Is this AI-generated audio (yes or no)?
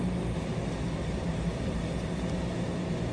no